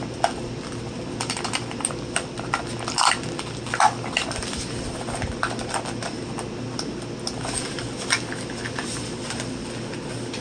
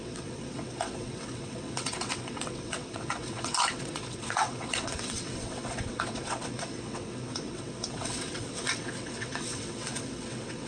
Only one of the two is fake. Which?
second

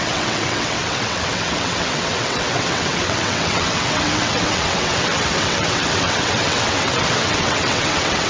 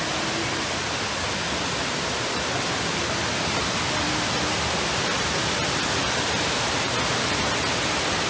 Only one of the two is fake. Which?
first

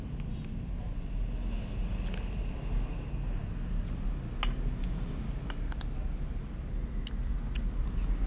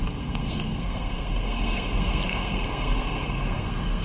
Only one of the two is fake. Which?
second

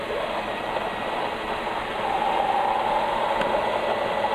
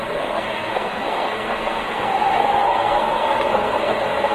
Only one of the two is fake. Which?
second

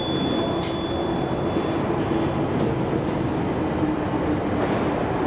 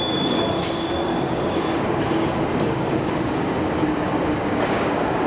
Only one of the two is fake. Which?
second